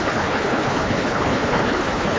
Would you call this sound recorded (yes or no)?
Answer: no